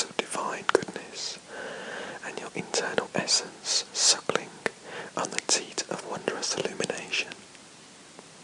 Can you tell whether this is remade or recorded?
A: recorded